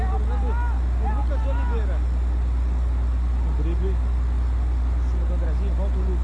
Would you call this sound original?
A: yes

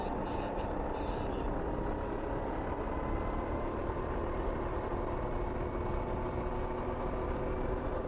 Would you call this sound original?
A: yes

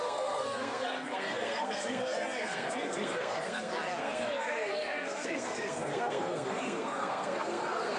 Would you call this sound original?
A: no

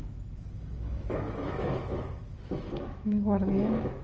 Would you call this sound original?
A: no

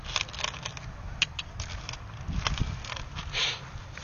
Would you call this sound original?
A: yes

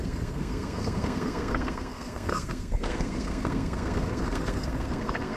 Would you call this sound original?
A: no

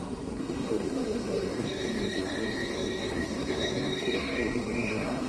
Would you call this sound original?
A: no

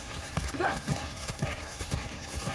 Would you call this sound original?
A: no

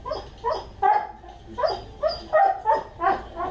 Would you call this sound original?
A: yes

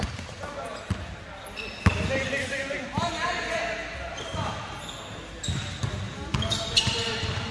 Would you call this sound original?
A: yes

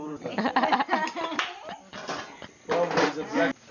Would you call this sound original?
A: yes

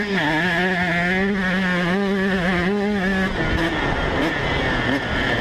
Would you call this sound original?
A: yes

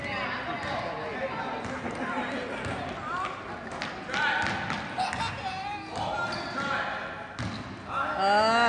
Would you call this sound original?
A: yes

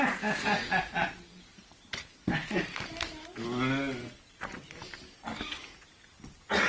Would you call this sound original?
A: yes